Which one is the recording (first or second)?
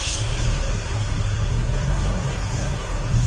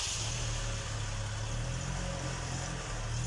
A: second